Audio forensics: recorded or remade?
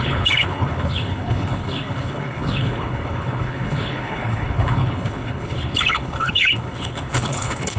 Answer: remade